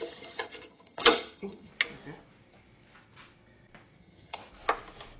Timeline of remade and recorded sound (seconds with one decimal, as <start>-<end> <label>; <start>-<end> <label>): 0.0-1.7 remade; 1.7-4.0 recorded; 4.0-4.4 remade; 4.4-5.2 recorded